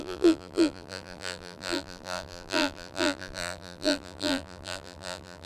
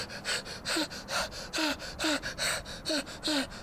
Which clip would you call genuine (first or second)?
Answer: second